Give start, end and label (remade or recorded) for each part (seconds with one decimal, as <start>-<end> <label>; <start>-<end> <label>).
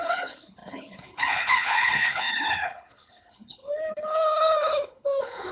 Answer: 0.0-5.5 remade